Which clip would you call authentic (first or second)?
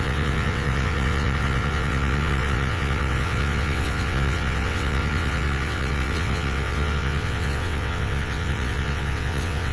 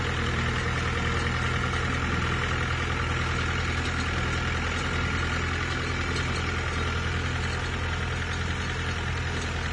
second